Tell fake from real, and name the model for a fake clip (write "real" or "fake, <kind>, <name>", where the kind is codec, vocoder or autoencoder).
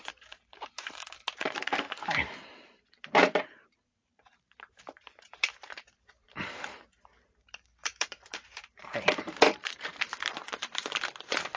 fake, vocoder, BigVGAN v2